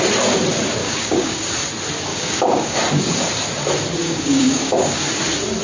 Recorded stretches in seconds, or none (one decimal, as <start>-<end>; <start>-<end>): 0.0-0.8; 1.4-2.1; 2.8-4.0; 5.0-5.6